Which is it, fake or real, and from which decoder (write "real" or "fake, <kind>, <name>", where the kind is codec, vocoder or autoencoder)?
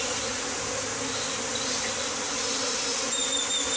real